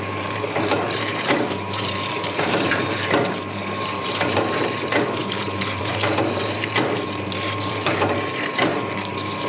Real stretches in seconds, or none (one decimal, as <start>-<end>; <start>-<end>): none